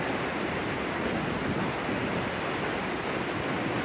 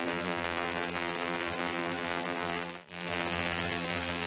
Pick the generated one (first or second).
second